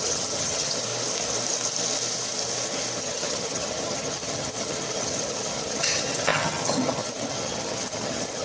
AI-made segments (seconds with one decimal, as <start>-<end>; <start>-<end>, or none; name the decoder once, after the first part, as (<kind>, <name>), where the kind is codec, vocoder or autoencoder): 0.0-0.9 (vocoder, HiFi-GAN); 3.0-8.4